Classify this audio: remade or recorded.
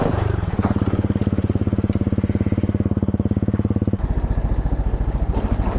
recorded